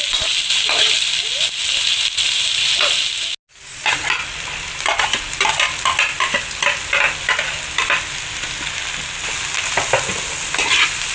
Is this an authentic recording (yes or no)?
yes